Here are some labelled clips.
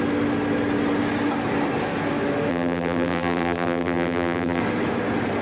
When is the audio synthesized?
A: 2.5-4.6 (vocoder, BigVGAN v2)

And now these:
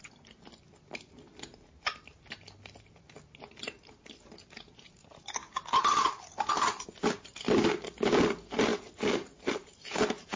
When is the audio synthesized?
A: 8.7-10.0 (vocoder, BigVGAN v2)

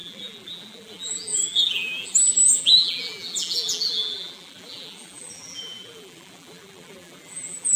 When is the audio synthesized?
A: 0.0-7.8 (vocoder, BigVGAN v2)